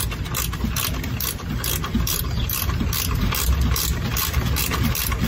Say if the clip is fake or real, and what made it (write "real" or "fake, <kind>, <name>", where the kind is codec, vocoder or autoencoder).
real